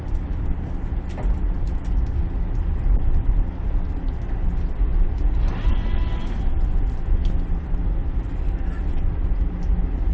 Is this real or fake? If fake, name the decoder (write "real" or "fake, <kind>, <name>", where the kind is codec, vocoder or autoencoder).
real